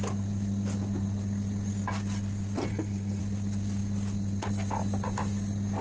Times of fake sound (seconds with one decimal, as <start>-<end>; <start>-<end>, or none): 2.7-3.2